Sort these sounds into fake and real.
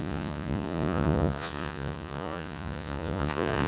fake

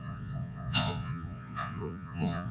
fake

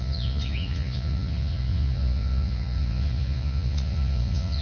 fake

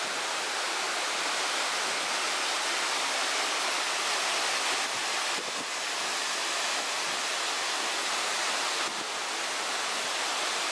real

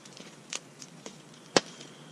fake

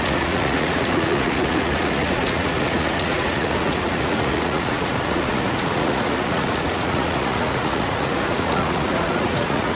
fake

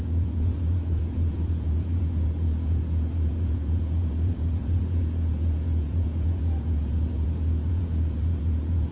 fake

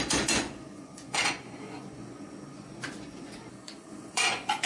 fake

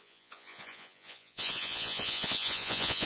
fake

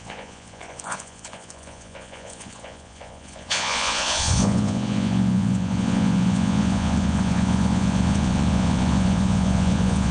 fake